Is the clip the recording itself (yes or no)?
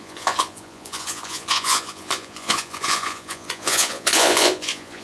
no